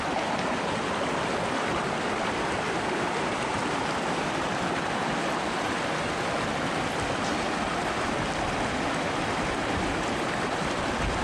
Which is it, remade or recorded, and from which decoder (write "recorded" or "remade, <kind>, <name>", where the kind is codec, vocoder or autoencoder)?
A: recorded